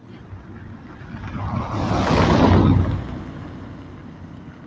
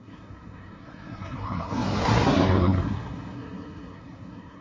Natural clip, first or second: first